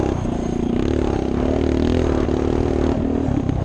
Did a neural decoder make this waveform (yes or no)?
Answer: no